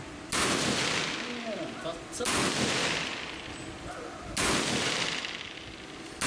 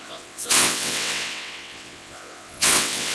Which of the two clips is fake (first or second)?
second